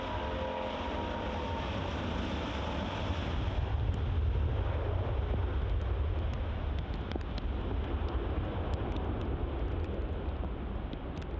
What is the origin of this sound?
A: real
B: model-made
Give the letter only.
A